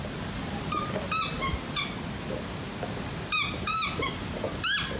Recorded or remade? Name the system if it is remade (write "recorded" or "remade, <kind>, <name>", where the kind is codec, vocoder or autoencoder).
recorded